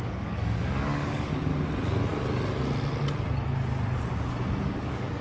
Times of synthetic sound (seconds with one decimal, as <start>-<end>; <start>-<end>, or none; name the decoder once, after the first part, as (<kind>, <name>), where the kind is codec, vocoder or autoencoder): 0.0-1.5 (codec, DAC); 4.6-5.2